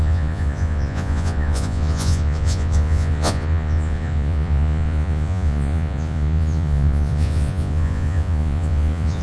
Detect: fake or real fake